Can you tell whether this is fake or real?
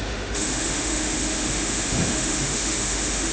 fake